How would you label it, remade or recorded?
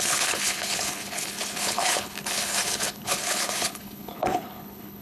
remade